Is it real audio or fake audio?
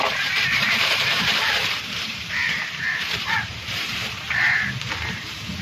fake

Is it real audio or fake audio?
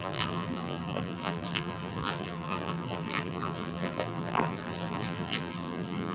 fake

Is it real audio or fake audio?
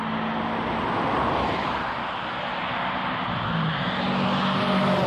real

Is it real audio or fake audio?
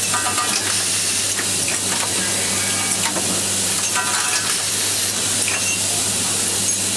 real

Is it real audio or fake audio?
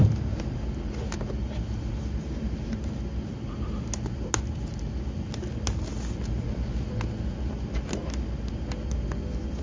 real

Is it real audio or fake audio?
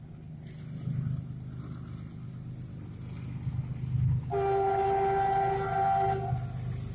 real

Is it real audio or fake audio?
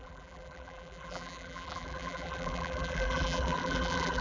fake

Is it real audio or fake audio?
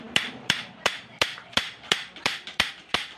fake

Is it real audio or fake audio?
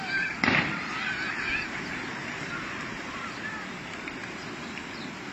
real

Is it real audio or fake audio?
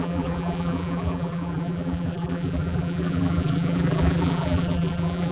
fake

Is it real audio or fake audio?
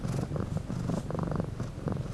real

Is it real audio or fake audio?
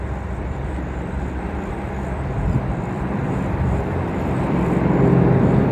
fake